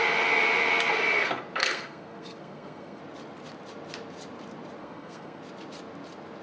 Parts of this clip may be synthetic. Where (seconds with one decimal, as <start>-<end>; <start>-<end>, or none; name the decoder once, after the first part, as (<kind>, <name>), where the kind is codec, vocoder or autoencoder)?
1.6-3.0 (codec, SNAC); 4.8-5.4